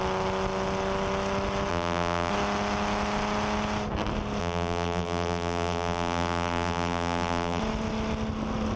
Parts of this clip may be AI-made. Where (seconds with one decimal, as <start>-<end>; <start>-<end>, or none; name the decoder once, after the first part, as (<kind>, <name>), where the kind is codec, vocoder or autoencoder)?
1.7-2.3 (vocoder, BigVGAN v2); 4.4-7.6